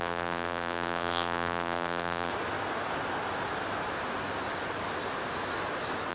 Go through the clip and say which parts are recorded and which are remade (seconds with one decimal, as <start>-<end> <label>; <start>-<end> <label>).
0.0-2.3 remade; 2.3-6.1 recorded